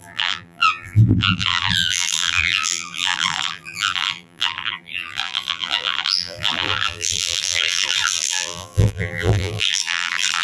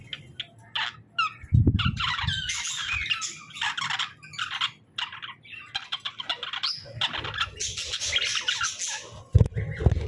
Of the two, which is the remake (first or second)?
first